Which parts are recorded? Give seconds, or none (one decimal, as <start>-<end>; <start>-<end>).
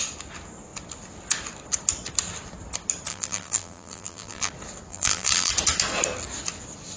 0.0-3.1; 4.5-4.9; 5.5-7.0